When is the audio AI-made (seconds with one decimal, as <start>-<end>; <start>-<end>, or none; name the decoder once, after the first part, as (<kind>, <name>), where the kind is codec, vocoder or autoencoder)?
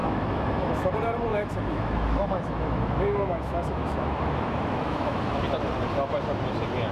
0.0-0.9 (autoencoder, DAC-VAE); 1.3-5.4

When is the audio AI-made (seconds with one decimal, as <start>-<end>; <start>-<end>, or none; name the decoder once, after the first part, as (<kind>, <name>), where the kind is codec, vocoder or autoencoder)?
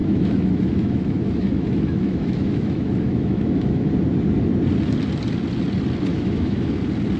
0.0-3.9 (autoencoder, DAC-VAE); 6.1-6.8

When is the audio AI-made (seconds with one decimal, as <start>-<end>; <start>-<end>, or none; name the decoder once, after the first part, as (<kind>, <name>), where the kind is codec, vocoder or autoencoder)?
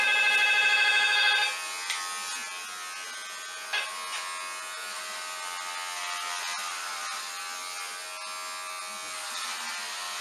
none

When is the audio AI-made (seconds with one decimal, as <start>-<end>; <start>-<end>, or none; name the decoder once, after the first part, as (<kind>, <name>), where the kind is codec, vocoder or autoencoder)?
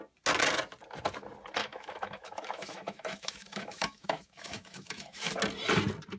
1.6-5.3 (autoencoder, DAC-VAE)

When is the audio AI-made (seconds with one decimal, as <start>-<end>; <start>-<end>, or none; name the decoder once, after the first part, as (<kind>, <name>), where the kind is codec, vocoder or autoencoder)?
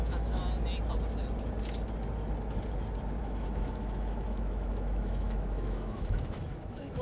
0.0-0.4 (autoencoder, DAC-VAE); 3.2-7.0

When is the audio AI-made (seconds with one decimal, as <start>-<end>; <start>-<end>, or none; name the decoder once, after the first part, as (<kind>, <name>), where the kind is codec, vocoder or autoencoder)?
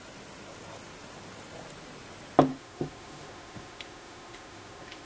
2.5-5.1 (autoencoder, DAC-VAE)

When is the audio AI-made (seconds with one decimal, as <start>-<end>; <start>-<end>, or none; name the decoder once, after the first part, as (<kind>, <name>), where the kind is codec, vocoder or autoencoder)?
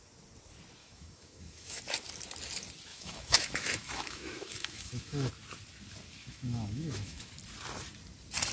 0.8-1.8 (autoencoder, DAC-VAE); 2.9-5.3; 6.2-7.3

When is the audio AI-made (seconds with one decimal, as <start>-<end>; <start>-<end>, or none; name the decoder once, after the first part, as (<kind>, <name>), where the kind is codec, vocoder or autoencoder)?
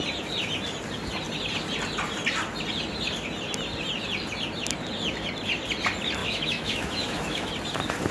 6.2-7.5 (autoencoder, DAC-VAE)